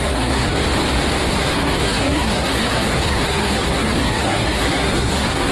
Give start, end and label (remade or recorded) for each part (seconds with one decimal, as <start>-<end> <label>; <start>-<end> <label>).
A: 0.0-0.6 remade; 0.6-1.3 recorded; 1.3-5.5 remade

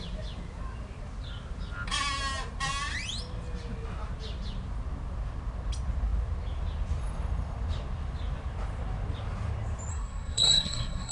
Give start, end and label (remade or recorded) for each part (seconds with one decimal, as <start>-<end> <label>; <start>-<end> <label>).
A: 0.0-9.9 recorded; 9.9-11.1 remade

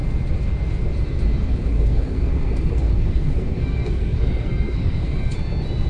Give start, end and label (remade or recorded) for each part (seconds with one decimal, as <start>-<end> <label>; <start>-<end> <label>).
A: 0.0-1.7 recorded; 1.7-5.2 remade; 5.2-5.9 recorded

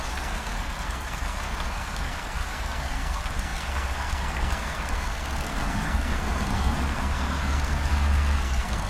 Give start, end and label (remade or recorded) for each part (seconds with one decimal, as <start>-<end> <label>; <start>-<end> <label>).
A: 0.0-8.9 remade

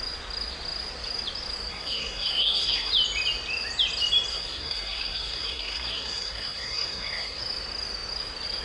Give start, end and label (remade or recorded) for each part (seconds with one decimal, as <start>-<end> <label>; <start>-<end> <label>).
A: 0.0-1.7 recorded; 1.7-2.9 remade; 2.9-4.3 recorded; 4.3-7.4 remade; 7.4-8.6 recorded

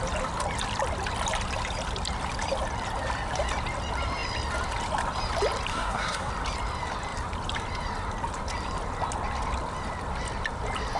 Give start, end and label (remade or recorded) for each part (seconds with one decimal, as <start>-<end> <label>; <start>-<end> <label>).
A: 0.0-5.7 recorded; 5.7-6.3 remade; 6.3-11.0 recorded

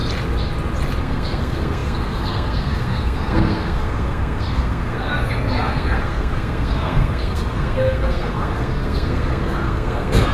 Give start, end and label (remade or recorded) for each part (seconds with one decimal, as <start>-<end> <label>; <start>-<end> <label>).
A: 0.0-1.0 recorded; 1.0-10.3 remade